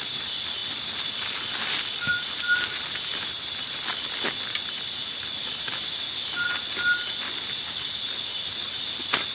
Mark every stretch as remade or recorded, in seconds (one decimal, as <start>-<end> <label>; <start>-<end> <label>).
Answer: 0.0-9.3 recorded